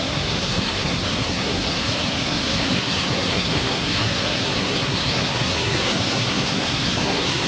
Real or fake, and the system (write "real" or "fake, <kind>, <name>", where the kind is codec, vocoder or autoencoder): fake, codec, SNAC